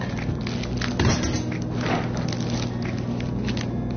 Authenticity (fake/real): real